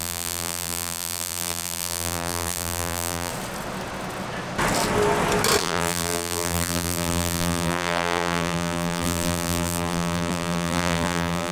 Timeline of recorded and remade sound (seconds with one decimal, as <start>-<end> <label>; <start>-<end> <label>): 0.0-3.3 remade; 3.3-5.6 recorded; 5.6-11.5 remade